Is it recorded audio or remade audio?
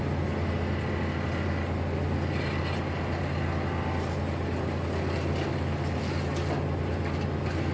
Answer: recorded